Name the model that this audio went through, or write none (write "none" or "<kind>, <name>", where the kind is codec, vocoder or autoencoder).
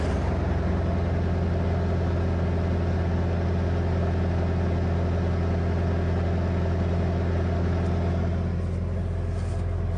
none